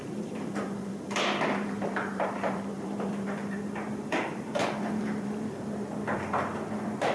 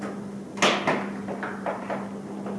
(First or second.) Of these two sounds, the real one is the second